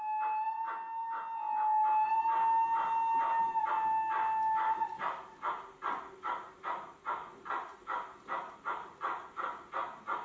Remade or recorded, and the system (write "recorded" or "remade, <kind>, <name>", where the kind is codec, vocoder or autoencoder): recorded